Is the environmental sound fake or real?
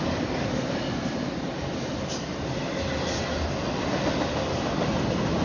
real